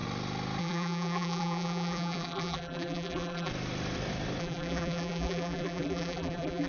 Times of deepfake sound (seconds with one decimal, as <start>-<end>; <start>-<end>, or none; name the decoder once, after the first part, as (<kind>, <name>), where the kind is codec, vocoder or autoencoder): 0.6-3.5 (vocoder, BigVGAN v2); 4.4-6.7

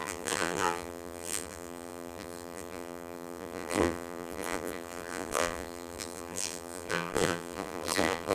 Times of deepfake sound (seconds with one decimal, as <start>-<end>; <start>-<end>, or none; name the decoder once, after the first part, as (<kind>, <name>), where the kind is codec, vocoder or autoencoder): 0.0-8.3 (vocoder, BigVGAN v2)

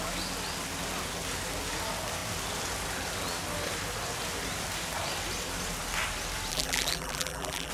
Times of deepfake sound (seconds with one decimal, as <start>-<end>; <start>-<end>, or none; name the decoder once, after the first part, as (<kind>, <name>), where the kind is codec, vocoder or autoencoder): 6.5-7.7 (vocoder, BigVGAN v2)

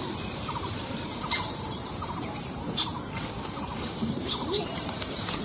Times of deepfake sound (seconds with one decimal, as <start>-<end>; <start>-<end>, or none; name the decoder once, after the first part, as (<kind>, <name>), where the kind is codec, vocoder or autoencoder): 0.0-2.9 (vocoder, BigVGAN v2); 3.6-5.4

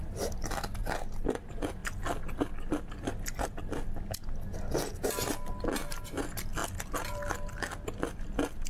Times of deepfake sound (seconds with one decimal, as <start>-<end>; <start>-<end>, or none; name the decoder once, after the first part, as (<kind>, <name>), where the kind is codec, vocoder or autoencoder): none

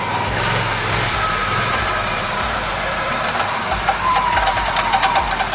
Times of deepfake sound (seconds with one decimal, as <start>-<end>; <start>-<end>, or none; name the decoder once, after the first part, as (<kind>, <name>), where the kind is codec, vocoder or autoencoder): 1.4-4.7 (vocoder, BigVGAN v2)

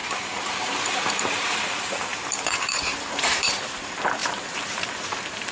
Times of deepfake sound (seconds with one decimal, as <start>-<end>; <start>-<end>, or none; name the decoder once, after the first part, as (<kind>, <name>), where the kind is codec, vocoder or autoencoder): 0.6-5.5 (vocoder, BigVGAN v2)